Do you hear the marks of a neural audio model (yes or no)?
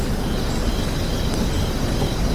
no